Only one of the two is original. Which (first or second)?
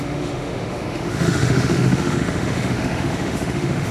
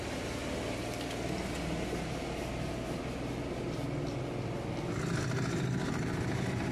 second